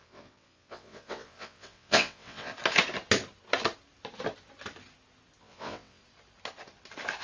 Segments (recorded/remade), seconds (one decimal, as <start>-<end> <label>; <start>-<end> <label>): 0.0-2.5 remade; 2.5-5.4 recorded; 5.4-6.0 remade; 6.0-7.2 recorded